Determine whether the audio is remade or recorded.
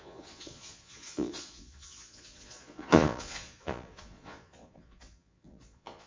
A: remade